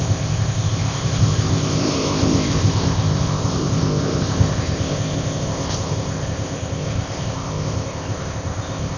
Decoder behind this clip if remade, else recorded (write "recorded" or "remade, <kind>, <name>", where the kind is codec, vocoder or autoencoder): remade, codec, ZipCodec